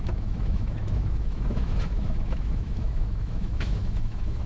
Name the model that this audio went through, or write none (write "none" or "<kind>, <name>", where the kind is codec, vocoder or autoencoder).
autoencoder, DAC-VAE